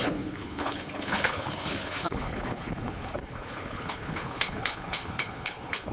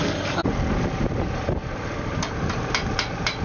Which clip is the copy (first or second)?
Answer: first